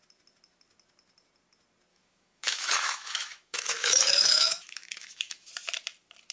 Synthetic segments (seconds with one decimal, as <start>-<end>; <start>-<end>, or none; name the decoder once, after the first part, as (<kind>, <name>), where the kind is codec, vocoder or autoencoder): 1.9-5.5 (autoencoder, DAC-VAE)